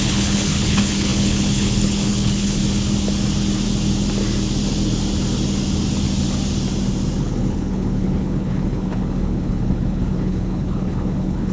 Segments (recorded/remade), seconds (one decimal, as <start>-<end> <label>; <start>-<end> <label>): 0.0-2.6 remade; 2.6-7.2 recorded; 7.2-11.5 remade